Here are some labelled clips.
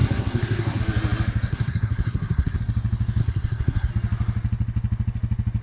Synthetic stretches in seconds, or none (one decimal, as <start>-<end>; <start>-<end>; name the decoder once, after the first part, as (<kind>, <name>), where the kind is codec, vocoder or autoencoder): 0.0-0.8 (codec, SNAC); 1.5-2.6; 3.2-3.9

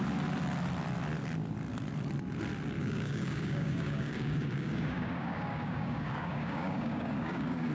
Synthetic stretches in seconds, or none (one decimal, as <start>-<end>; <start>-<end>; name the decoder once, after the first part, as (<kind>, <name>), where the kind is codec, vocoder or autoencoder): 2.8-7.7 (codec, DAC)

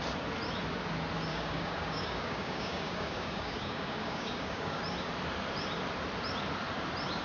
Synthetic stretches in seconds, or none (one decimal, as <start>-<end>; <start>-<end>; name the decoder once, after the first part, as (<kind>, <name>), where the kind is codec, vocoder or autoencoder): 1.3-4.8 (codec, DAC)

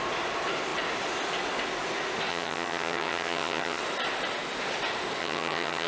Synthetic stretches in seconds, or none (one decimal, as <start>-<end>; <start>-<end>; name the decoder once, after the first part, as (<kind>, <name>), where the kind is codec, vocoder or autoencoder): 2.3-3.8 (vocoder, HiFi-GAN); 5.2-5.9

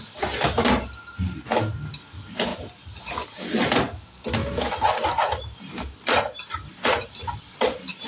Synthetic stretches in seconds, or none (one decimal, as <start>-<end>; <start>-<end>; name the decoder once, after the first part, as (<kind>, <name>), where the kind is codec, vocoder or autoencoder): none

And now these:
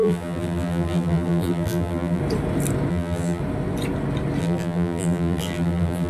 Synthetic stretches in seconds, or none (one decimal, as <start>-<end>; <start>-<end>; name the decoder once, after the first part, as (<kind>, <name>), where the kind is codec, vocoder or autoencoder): 0.0-2.2 (vocoder, BigVGAN v2); 2.9-3.4; 4.4-6.1

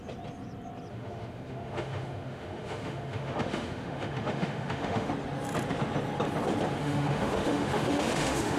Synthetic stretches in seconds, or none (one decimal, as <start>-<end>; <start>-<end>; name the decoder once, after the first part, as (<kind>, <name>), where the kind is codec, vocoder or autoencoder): 0.9-5.1 (autoencoder, DAC-VAE); 6.8-8.6

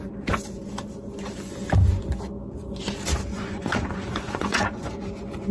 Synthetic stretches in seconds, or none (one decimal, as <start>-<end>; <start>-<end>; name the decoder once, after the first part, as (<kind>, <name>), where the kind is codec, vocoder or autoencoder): 3.3-4.9 (vocoder, Vocos)